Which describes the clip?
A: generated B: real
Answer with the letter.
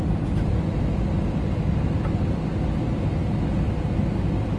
B